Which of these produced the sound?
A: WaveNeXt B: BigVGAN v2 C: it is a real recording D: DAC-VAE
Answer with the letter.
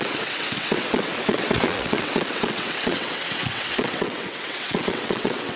A